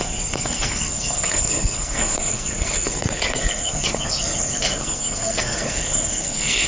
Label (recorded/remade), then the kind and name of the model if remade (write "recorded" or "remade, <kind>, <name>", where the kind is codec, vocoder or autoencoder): remade, codec, SNAC